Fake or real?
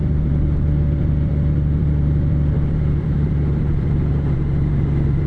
fake